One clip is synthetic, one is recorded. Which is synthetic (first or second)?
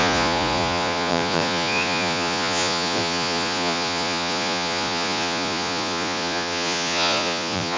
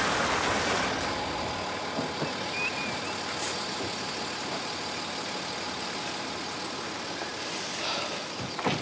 first